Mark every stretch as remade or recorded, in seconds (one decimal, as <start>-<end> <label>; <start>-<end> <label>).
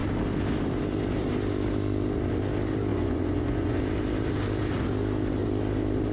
0.0-2.9 recorded; 2.9-3.8 remade; 3.8-6.1 recorded